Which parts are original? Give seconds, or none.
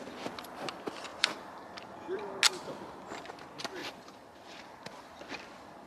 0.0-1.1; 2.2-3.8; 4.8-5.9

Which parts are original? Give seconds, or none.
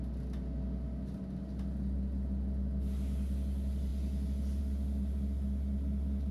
0.0-6.3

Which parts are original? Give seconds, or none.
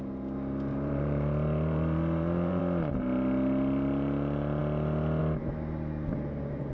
0.0-0.7; 2.6-6.7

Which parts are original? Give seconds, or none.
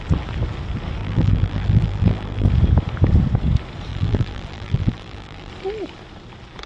0.0-1.0; 2.5-3.9; 5.5-6.7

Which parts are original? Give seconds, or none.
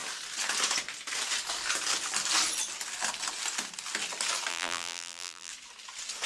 0.0-4.5; 5.5-6.3